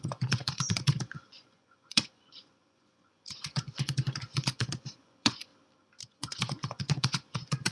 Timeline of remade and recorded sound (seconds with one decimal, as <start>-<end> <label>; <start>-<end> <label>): 0.0-5.5 remade; 5.5-6.0 recorded; 6.0-7.7 remade